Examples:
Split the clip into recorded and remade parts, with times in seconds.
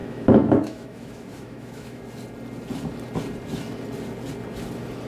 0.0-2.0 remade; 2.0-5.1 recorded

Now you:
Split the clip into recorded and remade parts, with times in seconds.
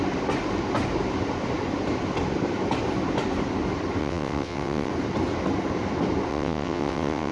0.0-4.0 recorded; 4.0-4.9 remade; 4.9-6.3 recorded; 6.3-7.3 remade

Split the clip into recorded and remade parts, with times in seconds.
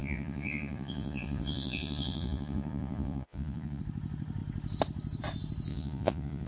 0.0-3.8 remade; 3.8-5.7 recorded; 5.7-6.5 remade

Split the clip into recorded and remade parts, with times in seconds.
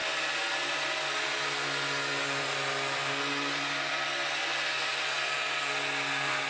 0.0-4.4 recorded; 4.4-5.1 remade; 5.1-6.5 recorded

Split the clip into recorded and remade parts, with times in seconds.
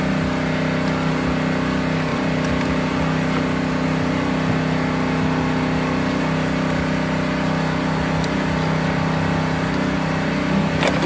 0.0-2.1 recorded; 2.1-2.9 remade; 2.9-11.1 recorded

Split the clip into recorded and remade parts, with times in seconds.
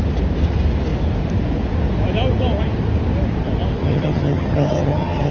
0.0-3.8 recorded; 3.8-5.3 remade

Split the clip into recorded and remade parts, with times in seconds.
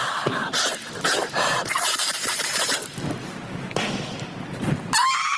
0.0-0.4 recorded; 0.4-2.8 remade; 2.8-5.4 recorded